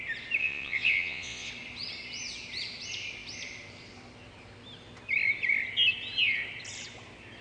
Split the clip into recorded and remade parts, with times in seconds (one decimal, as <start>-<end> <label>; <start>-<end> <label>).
0.0-0.4 recorded; 0.4-1.5 remade; 1.5-7.4 recorded